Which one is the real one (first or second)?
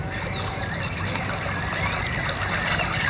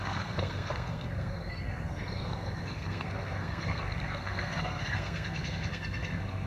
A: first